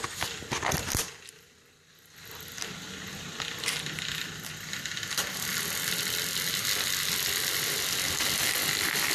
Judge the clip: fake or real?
real